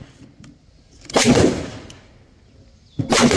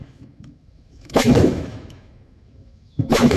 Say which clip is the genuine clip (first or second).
first